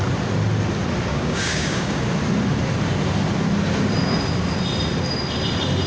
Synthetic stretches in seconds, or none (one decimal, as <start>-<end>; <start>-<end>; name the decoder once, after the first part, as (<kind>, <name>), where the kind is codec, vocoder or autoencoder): 1.1-2.0 (codec, DAC)

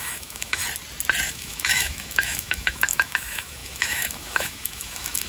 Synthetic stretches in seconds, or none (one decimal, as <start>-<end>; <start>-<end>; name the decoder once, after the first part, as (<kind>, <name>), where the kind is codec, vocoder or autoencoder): 0.0-0.6 (autoencoder, DAC-VAE); 1.3-5.3

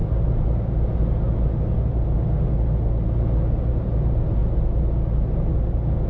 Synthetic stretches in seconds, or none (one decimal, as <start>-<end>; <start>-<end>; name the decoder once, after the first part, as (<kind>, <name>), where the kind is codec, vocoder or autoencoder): none

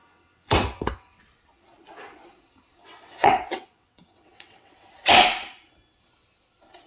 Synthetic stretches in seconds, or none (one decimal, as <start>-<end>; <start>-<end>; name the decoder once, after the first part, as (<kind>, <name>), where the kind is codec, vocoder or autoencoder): 0.0-1.2 (vocoder, WaveNeXt); 2.8-4.9

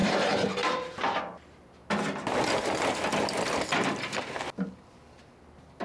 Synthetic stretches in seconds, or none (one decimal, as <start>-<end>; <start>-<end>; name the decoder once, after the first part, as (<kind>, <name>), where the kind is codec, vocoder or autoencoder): 0.0-1.2 (vocoder, BigVGAN v2)

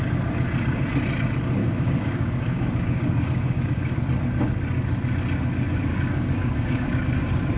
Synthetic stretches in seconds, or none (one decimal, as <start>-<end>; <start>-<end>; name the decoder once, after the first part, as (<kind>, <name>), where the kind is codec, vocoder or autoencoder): 1.6-4.0 (codec, DAC); 5.9-6.9